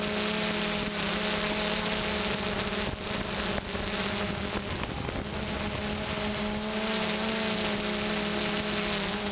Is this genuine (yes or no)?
yes